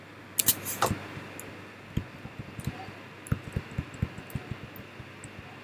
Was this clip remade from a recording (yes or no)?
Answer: no